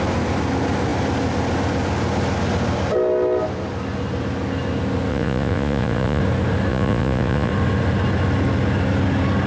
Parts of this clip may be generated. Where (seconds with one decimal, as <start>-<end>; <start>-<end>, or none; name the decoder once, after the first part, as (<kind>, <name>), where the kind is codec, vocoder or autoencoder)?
5.1-6.2 (vocoder, Vocos); 6.7-7.5

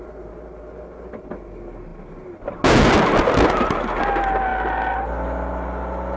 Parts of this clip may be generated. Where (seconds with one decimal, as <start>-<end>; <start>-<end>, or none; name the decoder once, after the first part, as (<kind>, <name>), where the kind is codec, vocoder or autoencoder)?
none